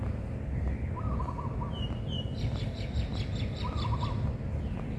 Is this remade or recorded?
recorded